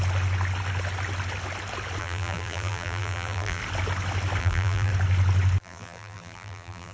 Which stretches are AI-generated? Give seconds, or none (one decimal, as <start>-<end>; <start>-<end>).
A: 2.0-3.6; 4.4-4.9; 5.6-6.9